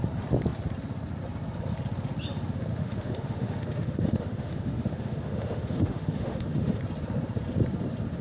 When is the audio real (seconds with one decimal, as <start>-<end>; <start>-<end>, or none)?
0.0-2.7; 6.8-8.2